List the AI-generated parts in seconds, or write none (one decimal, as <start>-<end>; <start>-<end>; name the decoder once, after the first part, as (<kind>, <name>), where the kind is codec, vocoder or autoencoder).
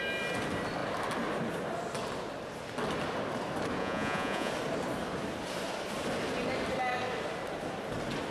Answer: 3.8-4.5 (vocoder, Vocos)